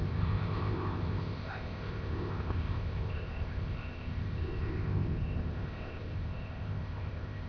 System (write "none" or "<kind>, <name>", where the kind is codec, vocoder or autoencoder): codec, ZipCodec